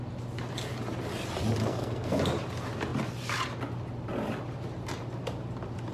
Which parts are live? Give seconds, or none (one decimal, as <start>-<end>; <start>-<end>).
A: 0.0-1.6; 2.2-5.9